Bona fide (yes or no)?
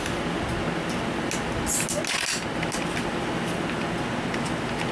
yes